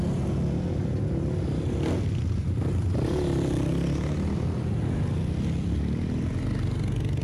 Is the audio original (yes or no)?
yes